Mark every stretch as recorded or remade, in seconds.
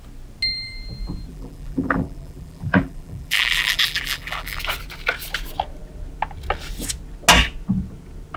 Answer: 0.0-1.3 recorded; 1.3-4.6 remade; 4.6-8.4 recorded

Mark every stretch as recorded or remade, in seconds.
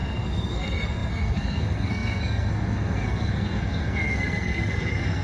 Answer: 0.0-5.2 remade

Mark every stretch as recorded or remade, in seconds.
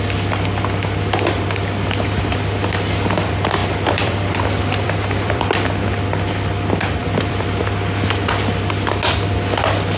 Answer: 0.0-3.6 recorded; 3.6-5.4 remade; 5.4-7.0 recorded; 7.0-7.6 remade; 7.6-10.0 recorded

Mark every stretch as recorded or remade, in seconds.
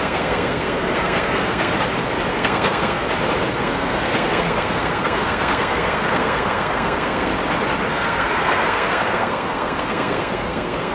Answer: 0.0-1.7 remade; 1.7-2.3 recorded; 2.3-3.0 remade; 3.0-3.5 recorded; 3.5-7.3 remade; 7.3-7.9 recorded; 7.9-10.9 remade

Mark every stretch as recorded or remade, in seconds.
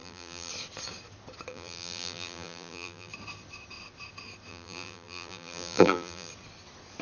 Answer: 0.0-0.5 remade; 0.5-1.5 recorded; 1.5-3.1 remade; 3.1-4.5 recorded; 4.5-6.3 remade; 6.3-7.0 recorded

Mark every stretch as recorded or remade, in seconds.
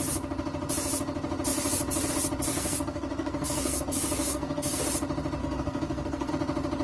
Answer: 0.0-2.5 recorded; 2.5-4.8 remade; 4.8-5.4 recorded; 5.4-6.3 remade; 6.3-6.8 recorded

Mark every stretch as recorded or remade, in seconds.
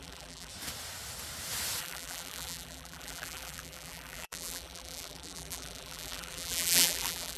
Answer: 0.0-0.5 remade; 0.5-1.8 recorded; 1.8-7.4 remade